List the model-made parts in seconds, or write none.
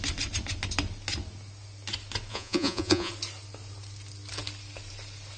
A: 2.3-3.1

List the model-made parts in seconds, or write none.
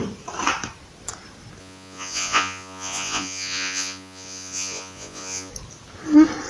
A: 1.6-5.5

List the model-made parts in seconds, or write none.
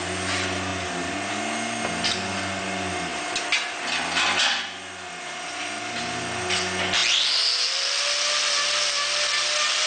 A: none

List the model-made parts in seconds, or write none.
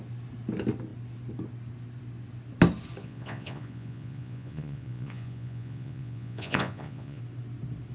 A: 3.0-7.2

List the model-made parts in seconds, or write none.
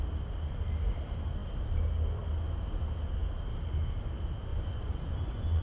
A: 4.5-5.6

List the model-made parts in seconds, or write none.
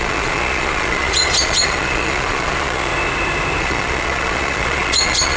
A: 0.0-2.9; 3.6-5.4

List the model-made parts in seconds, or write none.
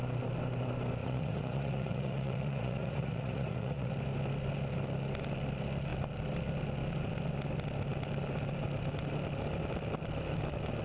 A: 1.0-3.9